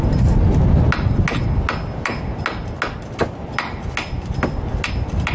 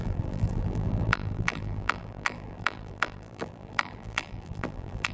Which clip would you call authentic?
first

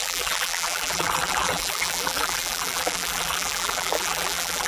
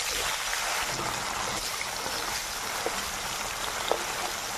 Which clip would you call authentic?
second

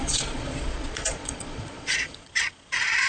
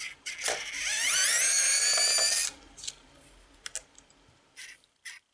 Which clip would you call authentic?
second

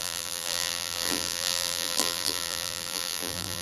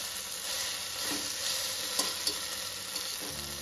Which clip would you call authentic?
second